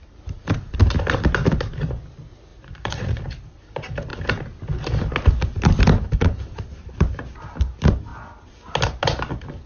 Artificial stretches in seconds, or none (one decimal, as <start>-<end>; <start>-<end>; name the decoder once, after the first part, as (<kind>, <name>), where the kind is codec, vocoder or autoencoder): 2.5-3.2 (vocoder, Vocos)